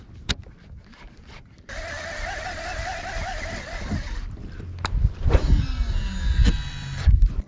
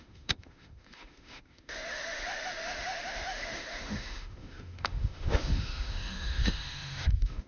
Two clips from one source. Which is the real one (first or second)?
first